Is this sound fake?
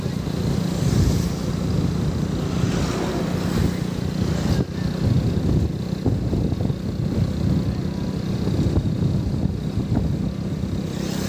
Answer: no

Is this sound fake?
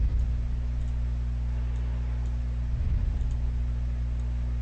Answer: no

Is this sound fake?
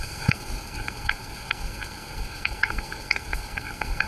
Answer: yes